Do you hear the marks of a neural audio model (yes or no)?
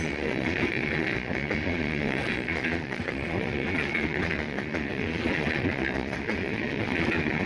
yes